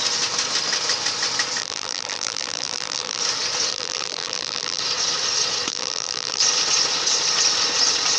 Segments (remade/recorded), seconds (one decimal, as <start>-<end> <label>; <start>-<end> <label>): 0.0-1.6 recorded; 1.6-3.2 remade; 3.2-3.7 recorded; 3.7-4.8 remade; 4.8-5.7 recorded; 5.7-6.4 remade; 6.4-8.2 recorded